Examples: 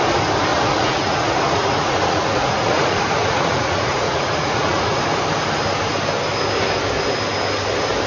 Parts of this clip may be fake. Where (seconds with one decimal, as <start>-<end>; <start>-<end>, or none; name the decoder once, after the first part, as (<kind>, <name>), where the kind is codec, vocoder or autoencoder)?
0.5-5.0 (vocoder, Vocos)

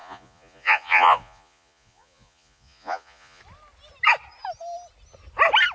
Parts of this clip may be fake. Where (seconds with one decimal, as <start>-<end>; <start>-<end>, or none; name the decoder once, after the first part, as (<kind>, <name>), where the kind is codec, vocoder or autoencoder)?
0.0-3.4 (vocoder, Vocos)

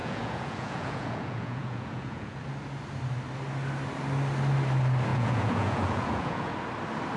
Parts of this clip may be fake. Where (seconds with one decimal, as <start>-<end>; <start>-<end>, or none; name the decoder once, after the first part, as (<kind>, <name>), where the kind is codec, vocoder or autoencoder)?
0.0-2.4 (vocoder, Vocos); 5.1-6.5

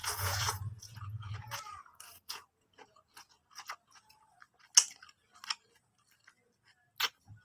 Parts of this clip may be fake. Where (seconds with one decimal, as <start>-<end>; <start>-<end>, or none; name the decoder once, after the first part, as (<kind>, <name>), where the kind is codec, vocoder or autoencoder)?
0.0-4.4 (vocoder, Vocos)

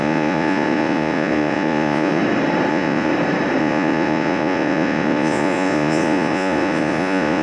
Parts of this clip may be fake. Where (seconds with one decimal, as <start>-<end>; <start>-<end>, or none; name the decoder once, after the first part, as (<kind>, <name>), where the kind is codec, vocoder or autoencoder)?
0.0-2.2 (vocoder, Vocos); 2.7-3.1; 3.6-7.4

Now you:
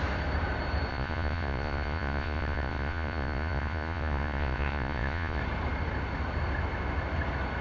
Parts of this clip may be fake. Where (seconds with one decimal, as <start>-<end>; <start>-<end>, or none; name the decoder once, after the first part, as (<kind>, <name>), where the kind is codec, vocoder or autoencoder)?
0.9-5.4 (vocoder, Vocos)

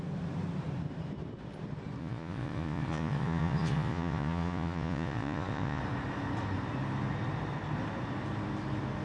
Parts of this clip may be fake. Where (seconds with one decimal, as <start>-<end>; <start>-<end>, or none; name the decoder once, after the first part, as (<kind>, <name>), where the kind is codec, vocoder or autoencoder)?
2.0-5.8 (vocoder, Vocos)

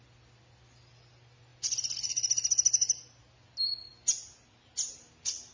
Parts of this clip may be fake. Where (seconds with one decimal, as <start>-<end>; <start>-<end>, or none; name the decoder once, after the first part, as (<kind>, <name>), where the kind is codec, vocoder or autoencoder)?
none